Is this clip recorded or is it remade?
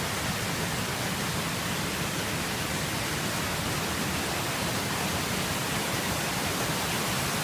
recorded